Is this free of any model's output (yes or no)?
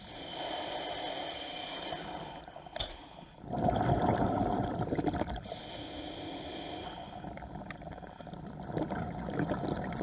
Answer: yes